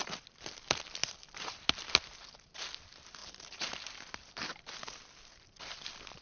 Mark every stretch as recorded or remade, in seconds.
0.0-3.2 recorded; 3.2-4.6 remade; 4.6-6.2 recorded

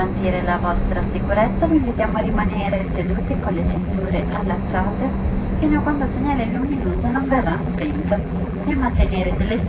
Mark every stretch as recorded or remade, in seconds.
0.0-1.7 recorded; 1.7-4.5 remade; 4.5-6.5 recorded; 6.5-9.7 remade

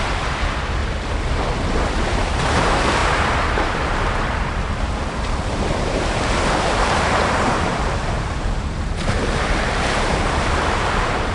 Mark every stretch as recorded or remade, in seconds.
0.0-0.8 remade; 0.8-2.2 recorded; 2.2-11.3 remade